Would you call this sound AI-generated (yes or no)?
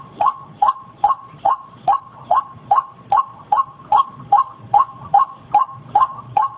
yes